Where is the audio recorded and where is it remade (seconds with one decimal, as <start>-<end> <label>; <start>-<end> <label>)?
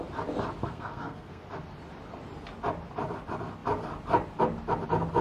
0.0-0.6 recorded; 0.6-1.4 remade; 1.4-5.2 recorded